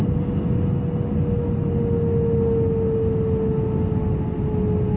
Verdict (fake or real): real